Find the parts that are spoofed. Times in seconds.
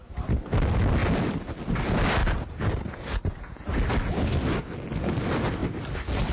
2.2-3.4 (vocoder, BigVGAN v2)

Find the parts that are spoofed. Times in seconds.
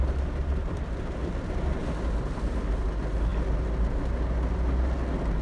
0.6-1.3 (vocoder, BigVGAN v2)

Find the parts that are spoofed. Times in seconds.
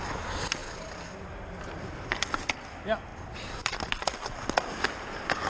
0.6-2.6 (vocoder, BigVGAN v2); 3.1-3.9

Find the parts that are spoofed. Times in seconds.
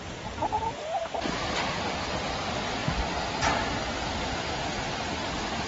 none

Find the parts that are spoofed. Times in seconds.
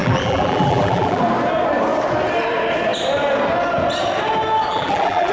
0.0-1.2 (vocoder, BigVGAN v2); 4.7-5.3